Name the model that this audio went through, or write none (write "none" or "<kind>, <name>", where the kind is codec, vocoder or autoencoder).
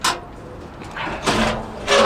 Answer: none